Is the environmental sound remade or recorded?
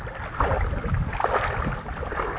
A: recorded